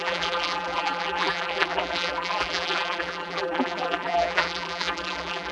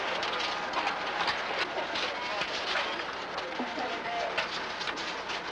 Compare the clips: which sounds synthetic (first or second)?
first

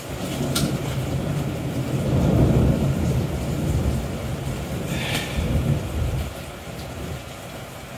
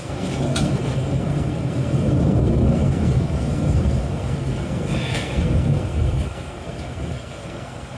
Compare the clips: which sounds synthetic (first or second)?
second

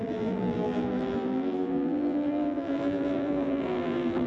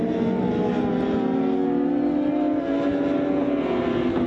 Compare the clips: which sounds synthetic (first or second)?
first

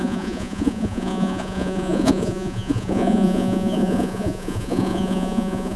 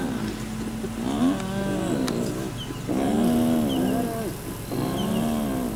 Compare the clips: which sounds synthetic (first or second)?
first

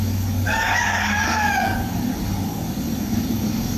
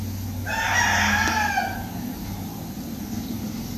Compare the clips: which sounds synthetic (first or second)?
first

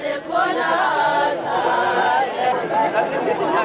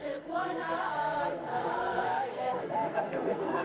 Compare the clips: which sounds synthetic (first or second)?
second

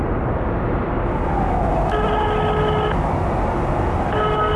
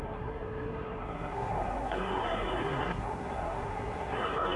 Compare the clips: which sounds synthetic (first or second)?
second